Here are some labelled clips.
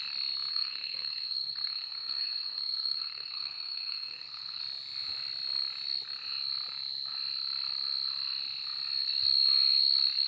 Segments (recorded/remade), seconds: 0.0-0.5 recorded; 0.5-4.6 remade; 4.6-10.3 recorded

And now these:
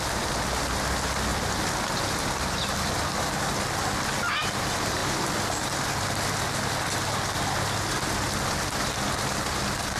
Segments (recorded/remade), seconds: 0.0-10.0 recorded

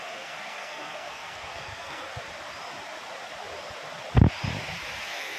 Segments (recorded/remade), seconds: 0.0-2.1 remade; 2.1-5.0 recorded; 5.0-5.4 remade

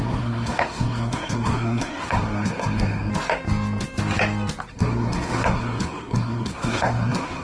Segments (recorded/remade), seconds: 0.0-3.1 remade; 3.1-4.7 recorded; 4.7-7.4 remade